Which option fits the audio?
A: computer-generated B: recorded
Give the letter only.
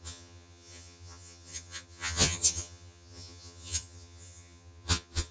A